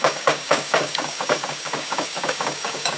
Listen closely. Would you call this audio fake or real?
fake